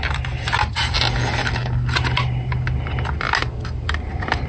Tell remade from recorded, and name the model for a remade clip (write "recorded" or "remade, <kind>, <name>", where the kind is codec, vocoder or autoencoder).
recorded